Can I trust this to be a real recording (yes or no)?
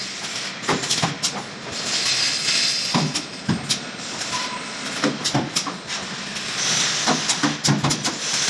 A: yes